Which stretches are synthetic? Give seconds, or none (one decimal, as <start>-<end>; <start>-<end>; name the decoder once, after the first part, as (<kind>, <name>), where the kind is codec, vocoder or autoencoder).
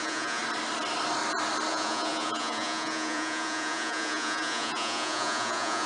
0.0-0.4 (vocoder, Vocos); 1.7-5.9